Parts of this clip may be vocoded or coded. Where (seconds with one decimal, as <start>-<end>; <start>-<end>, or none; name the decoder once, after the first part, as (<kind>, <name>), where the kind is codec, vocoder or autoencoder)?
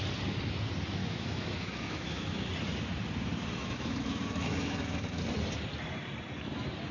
1.0-2.5 (autoencoder, DAC-VAE); 3.6-5.2